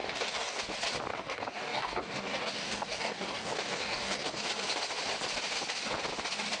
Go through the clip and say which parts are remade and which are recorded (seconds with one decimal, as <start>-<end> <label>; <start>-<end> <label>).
0.0-0.6 remade; 0.6-1.1 recorded; 1.1-4.4 remade; 4.4-6.6 recorded